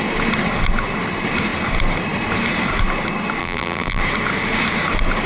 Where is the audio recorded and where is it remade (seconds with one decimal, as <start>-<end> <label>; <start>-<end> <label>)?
0.0-3.4 recorded; 3.4-4.0 remade; 4.0-5.3 recorded